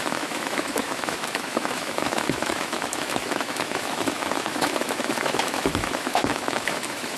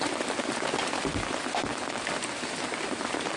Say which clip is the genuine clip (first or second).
second